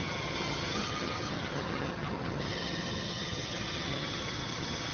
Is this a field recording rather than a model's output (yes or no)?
no